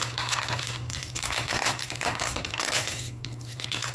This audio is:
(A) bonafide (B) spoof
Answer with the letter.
B